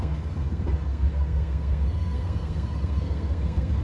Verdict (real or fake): fake